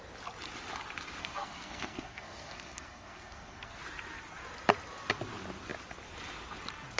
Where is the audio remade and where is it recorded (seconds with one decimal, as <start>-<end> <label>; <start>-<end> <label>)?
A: 0.0-1.2 recorded; 1.2-3.8 remade; 3.8-7.0 recorded